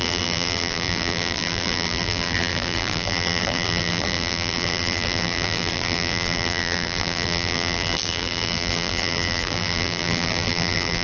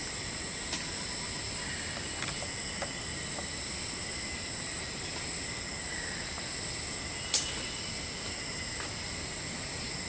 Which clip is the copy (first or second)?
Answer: first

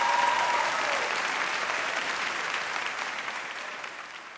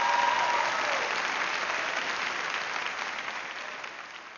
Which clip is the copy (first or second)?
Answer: first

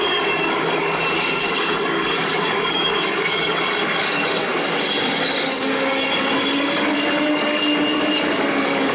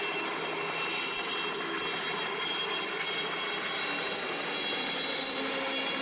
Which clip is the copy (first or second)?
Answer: first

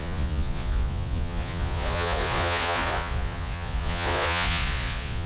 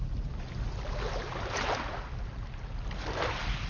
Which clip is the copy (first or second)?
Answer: first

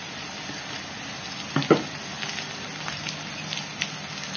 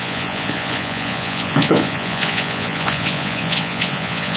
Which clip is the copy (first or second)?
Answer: second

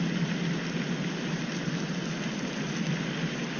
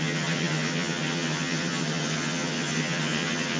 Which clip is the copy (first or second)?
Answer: second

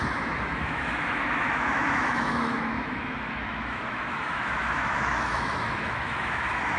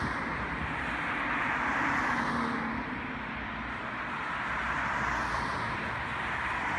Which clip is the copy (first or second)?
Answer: first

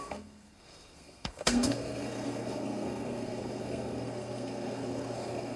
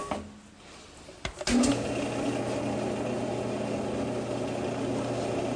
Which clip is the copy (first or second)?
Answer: first